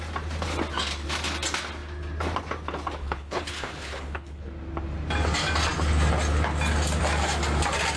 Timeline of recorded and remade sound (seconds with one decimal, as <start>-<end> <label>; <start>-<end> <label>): 0.0-3.0 recorded; 3.0-4.5 remade; 4.5-8.0 recorded